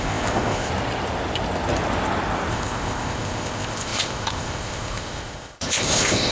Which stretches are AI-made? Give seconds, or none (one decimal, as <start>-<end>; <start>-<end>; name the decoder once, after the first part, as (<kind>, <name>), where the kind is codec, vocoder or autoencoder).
0.0-0.7 (codec, ZipCodec); 2.5-6.3